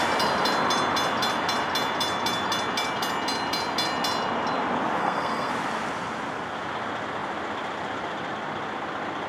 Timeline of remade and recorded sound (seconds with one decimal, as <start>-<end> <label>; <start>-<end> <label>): 0.0-5.0 recorded; 5.0-5.5 remade; 5.5-9.3 recorded

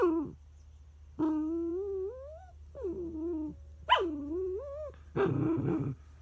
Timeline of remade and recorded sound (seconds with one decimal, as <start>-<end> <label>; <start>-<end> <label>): 0.0-6.2 recorded

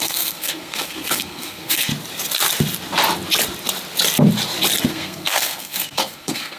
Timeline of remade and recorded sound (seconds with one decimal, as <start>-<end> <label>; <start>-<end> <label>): 0.0-1.9 remade; 1.9-4.9 recorded; 4.9-6.6 remade

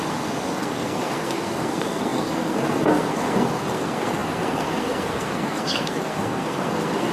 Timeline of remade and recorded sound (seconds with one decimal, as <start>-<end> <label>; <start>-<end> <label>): 0.0-7.1 remade

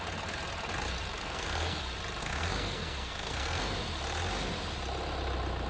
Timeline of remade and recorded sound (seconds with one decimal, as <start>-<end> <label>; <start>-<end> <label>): 0.0-1.2 recorded; 1.2-1.8 remade; 1.8-2.2 recorded; 2.2-3.6 remade; 3.6-5.7 recorded